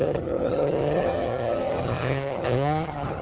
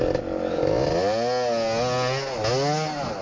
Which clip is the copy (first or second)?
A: first